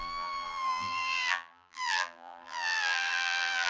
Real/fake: fake